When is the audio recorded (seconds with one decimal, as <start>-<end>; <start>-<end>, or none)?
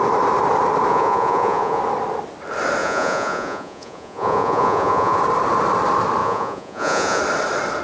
0.0-0.9; 1.8-2.8; 5.2-6.2; 7.2-7.8